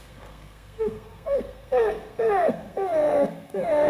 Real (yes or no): no